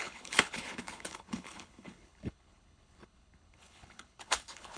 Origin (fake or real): fake